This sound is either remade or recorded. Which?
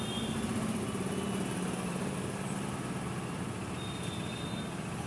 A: recorded